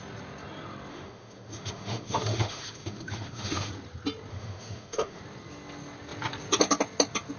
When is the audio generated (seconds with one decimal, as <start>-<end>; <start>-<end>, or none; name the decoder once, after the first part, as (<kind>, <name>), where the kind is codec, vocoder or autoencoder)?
0.9-3.7 (autoencoder, DAC-VAE); 4.3-5.2